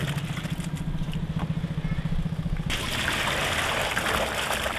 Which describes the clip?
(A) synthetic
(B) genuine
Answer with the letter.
B